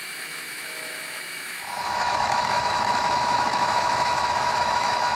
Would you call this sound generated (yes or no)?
yes